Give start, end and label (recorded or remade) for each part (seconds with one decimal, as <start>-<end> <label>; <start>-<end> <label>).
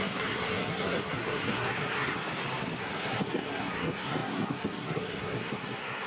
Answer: 0.0-2.2 remade; 2.2-2.8 recorded; 2.8-6.1 remade